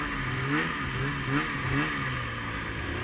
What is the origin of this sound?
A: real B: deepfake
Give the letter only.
A